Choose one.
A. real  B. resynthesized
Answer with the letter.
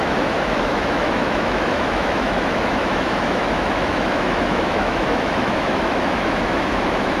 B